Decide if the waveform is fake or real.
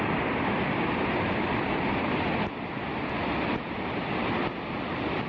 real